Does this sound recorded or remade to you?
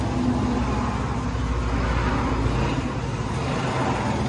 recorded